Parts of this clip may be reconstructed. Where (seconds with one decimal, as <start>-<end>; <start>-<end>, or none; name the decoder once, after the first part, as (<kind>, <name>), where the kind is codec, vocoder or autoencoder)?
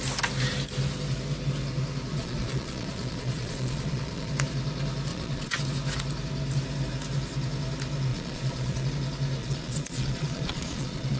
2.1-4.3 (vocoder, Vocos); 5.1-5.6; 8.1-8.9; 9.4-11.2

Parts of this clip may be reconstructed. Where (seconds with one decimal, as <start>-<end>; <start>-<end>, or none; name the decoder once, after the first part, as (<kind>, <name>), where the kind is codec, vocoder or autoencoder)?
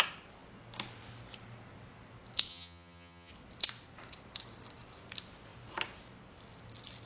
2.5-3.3 (vocoder, HiFi-GAN)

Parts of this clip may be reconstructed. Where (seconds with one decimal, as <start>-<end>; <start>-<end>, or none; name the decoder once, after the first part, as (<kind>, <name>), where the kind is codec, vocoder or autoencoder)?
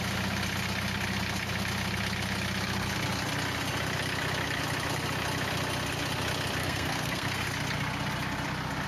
6.6-7.4 (codec, SNAC)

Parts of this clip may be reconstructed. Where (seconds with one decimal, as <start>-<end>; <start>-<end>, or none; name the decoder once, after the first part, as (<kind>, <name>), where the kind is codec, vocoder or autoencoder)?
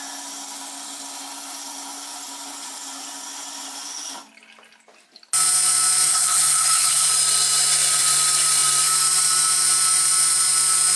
6.1-7.1 (codec, HILCodec)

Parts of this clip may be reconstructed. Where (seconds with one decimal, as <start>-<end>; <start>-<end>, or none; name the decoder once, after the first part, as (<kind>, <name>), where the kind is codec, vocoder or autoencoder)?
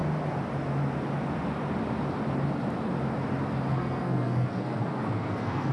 3.7-5.7 (codec, SNAC)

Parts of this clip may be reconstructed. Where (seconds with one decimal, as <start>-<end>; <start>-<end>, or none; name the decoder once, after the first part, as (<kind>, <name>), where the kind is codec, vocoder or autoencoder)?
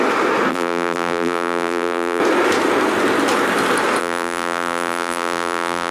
0.5-2.2 (vocoder, BigVGAN v2); 4.0-5.9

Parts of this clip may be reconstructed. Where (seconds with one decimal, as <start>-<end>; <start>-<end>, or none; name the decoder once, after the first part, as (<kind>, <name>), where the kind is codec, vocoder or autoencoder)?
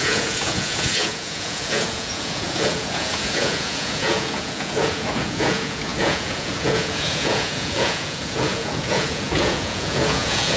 0.0-10.6 (vocoder, Vocos)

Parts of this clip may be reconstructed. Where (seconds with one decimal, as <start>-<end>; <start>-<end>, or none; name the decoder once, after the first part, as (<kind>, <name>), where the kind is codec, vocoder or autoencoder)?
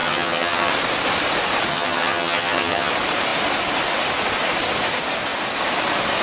0.0-0.7 (vocoder, HiFi-GAN); 1.7-2.9